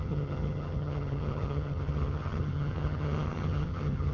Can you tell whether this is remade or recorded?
remade